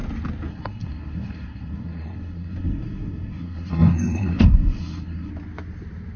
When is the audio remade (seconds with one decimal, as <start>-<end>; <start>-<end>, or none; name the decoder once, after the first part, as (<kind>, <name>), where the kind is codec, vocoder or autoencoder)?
0.5-5.3 (codec, SNAC)